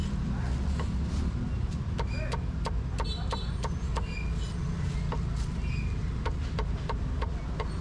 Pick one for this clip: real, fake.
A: real